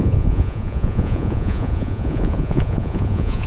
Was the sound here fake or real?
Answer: fake